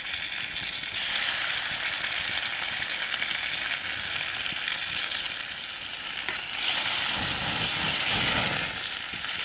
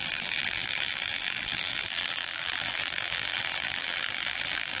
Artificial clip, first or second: second